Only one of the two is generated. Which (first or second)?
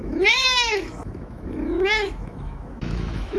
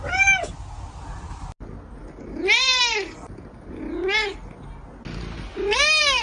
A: first